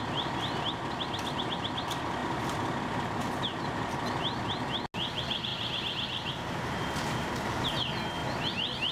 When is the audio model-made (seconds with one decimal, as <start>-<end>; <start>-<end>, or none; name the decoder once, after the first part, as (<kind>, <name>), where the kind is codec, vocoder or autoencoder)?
5.5-7.7 (vocoder, BigVGAN v2)